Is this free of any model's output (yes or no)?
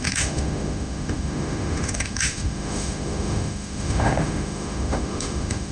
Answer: no